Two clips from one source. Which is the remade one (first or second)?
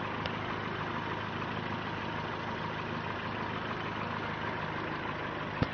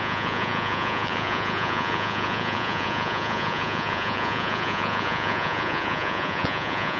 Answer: second